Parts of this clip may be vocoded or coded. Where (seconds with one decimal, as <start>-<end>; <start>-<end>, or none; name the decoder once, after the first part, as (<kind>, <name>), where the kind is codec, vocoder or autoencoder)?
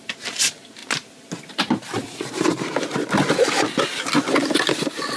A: none